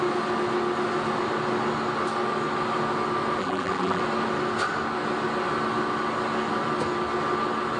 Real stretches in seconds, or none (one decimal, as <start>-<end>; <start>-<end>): 0.0-3.4; 4.0-7.8